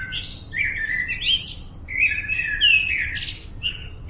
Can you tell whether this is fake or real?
real